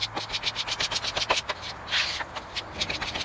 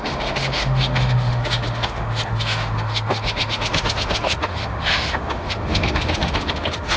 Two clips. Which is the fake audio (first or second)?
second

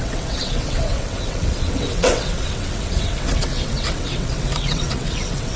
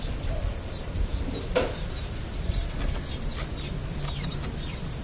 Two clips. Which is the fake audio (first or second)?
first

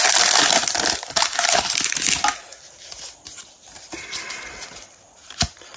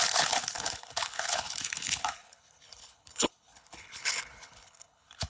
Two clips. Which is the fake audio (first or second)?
second